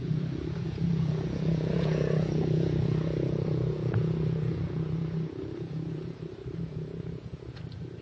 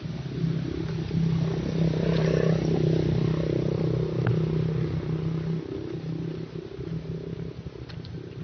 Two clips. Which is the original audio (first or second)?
second